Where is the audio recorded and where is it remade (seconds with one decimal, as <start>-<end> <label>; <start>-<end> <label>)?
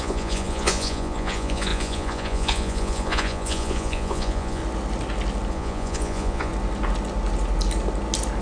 0.0-4.6 remade; 4.6-5.5 recorded; 5.5-6.5 remade; 6.5-8.4 recorded